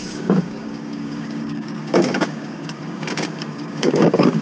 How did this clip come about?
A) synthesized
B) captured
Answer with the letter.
A